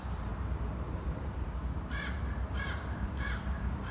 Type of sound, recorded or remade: remade